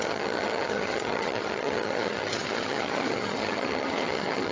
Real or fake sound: fake